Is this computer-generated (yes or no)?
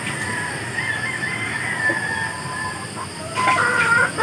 no